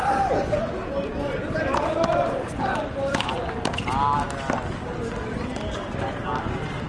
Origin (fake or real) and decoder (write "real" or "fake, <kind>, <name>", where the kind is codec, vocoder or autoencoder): real